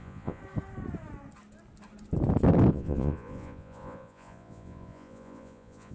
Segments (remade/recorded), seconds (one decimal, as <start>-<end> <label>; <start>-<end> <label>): 0.0-0.4 remade; 0.4-2.7 recorded; 2.7-5.9 remade

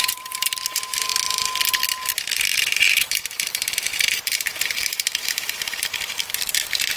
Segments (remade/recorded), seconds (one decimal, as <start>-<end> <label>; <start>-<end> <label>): 0.0-1.1 remade; 1.1-2.1 recorded; 2.1-7.0 remade